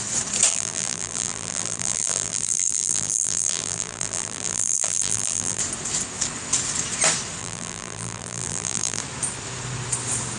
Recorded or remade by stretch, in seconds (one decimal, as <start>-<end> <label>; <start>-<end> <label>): 0.0-0.5 recorded; 0.5-5.6 remade; 5.6-7.4 recorded; 7.4-9.0 remade; 9.0-10.4 recorded